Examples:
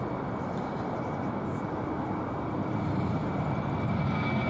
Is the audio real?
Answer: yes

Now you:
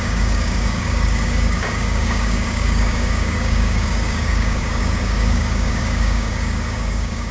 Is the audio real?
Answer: no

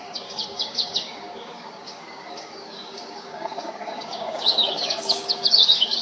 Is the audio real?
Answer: no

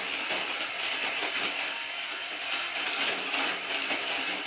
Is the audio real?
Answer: yes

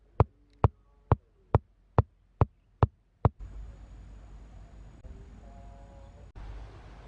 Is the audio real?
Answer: yes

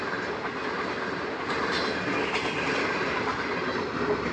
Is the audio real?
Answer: yes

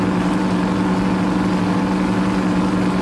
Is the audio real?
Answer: yes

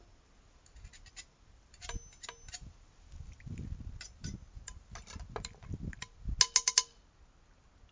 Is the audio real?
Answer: yes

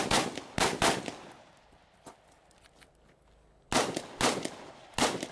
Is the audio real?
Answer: yes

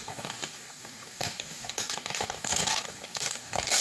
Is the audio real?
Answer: no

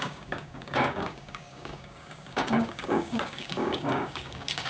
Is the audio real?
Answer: no